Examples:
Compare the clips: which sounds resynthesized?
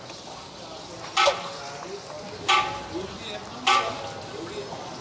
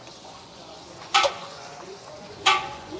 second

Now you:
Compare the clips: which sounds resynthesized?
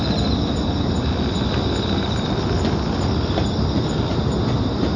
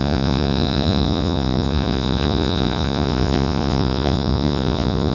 second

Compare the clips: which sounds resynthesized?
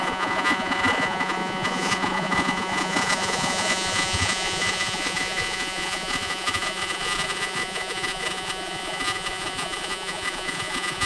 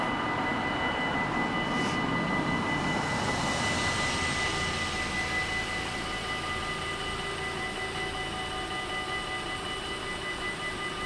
first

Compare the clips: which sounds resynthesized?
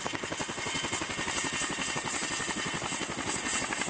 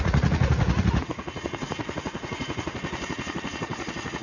second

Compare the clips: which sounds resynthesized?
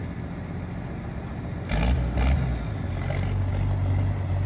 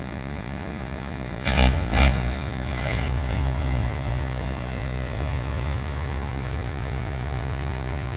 second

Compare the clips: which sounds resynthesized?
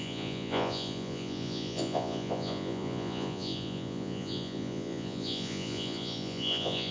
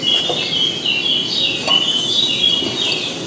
first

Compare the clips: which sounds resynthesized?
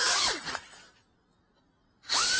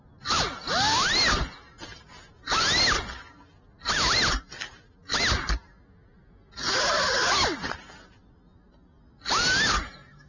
first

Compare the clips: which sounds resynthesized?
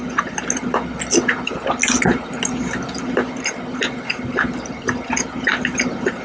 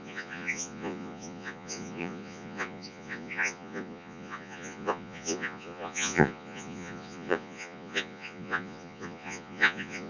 second